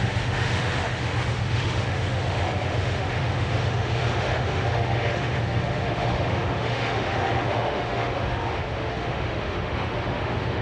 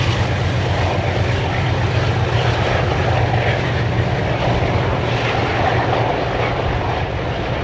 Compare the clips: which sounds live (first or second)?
second